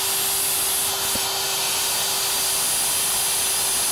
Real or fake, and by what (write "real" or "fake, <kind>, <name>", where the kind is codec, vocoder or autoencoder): real